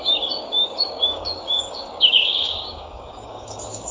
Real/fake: fake